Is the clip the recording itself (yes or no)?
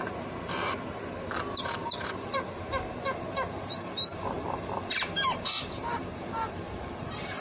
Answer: no